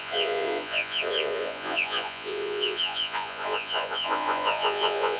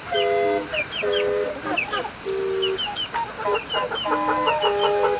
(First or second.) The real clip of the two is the second